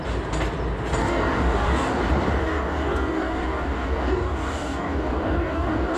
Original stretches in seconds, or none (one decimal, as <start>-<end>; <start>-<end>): 0.0-1.0; 2.0-2.4

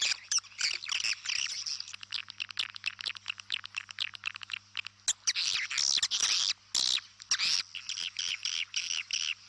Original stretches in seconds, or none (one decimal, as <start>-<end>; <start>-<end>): 0.0-9.5

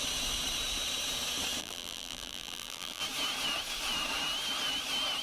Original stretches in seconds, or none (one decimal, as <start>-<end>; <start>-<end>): 0.0-1.6; 3.0-5.2